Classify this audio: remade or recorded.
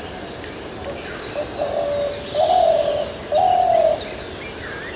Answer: recorded